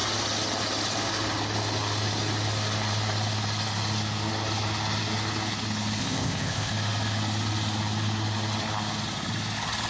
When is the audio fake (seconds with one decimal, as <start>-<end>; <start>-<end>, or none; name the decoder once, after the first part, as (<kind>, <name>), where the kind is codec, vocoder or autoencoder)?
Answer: 6.0-6.7 (codec, ZipCodec)